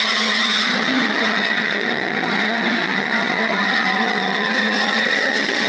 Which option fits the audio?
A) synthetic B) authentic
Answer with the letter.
A